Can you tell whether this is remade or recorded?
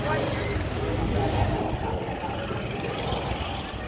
recorded